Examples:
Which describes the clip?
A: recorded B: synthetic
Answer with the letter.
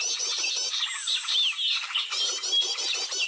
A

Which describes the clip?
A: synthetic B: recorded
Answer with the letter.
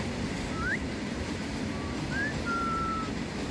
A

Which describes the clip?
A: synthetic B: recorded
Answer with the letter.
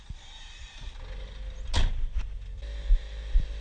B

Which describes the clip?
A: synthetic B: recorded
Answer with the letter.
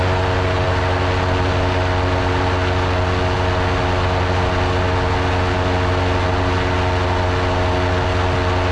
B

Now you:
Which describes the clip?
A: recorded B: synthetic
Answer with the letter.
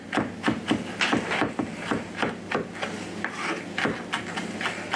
A